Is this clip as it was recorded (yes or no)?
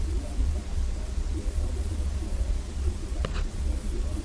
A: no